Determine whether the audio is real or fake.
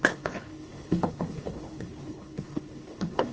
fake